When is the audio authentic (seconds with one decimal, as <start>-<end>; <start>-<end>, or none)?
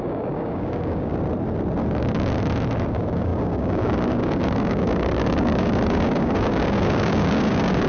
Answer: 1.1-2.9